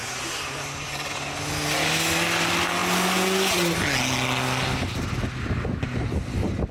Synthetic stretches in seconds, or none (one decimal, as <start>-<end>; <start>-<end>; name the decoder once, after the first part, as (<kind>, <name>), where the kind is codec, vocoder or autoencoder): 0.0-1.1 (vocoder, BigVGAN v2)